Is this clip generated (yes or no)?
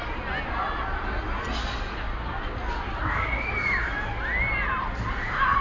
no